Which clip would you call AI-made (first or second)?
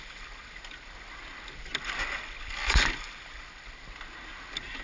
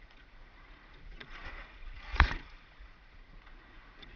second